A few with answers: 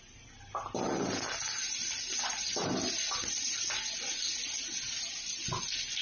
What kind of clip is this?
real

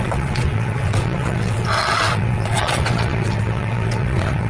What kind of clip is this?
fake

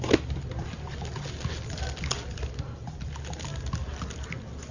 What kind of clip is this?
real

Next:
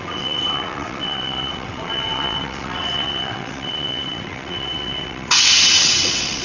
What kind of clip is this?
fake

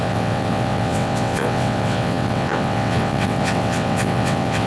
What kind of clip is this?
fake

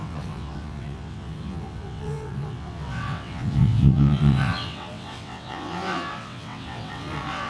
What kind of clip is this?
fake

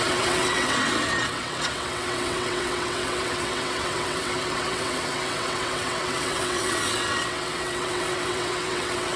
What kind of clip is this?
fake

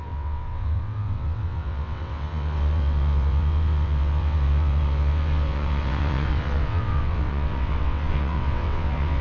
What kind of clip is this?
fake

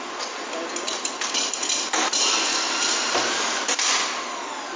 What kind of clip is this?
real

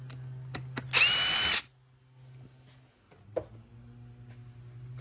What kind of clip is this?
real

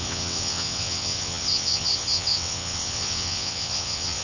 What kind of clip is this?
fake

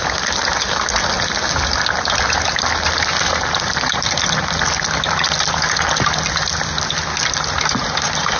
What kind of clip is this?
real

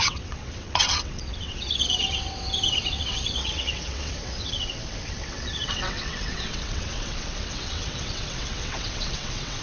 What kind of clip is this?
fake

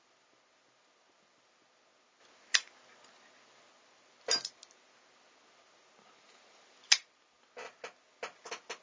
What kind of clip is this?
real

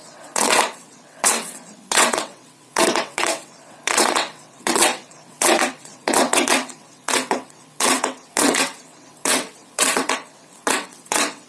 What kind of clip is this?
fake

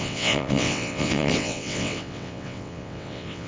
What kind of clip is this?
fake